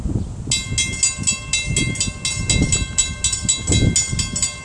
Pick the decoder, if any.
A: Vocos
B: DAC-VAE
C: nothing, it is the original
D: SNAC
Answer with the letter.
C